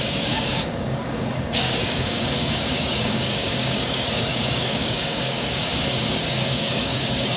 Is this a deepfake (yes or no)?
yes